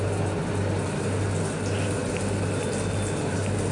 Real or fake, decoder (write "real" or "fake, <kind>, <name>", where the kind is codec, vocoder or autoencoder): real